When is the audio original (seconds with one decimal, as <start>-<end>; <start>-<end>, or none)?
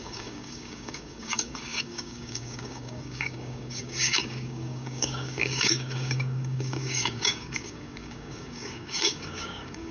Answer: none